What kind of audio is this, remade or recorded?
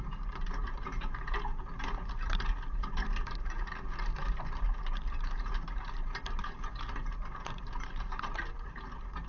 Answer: remade